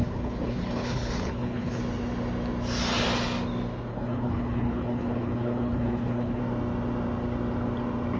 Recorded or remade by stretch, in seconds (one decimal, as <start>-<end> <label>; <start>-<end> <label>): 0.0-1.8 remade; 1.8-3.9 recorded; 3.9-6.4 remade; 6.4-8.2 recorded